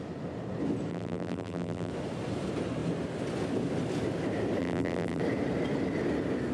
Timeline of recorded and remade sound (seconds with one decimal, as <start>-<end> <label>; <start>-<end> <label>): 0.0-0.9 recorded; 0.9-1.9 remade; 1.9-4.6 recorded; 4.6-5.2 remade; 5.2-6.5 recorded